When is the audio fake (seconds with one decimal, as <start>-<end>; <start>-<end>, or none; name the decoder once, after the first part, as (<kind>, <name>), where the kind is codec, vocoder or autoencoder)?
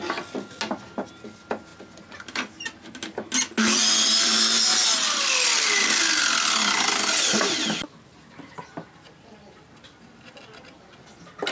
none